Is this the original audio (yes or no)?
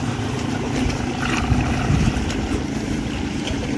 no